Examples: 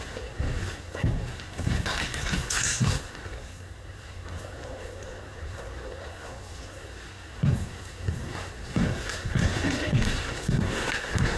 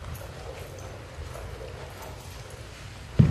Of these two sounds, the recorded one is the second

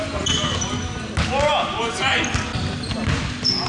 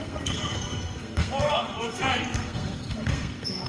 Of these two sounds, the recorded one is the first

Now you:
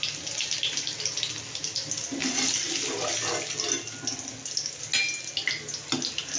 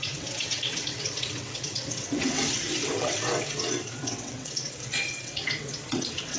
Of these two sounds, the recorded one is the first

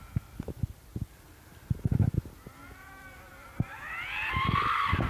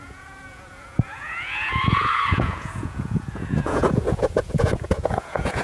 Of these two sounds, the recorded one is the first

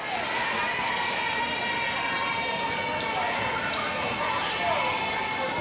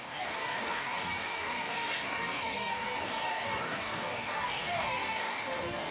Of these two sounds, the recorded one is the first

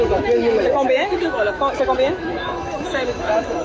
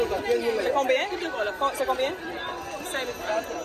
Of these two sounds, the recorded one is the second